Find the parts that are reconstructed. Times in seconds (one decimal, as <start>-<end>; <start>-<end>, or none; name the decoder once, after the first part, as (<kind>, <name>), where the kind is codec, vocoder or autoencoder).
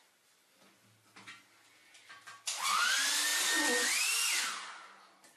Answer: none